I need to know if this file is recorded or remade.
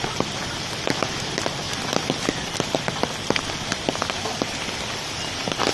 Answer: remade